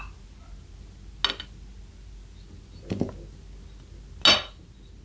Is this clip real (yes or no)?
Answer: yes